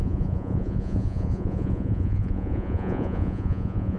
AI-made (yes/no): yes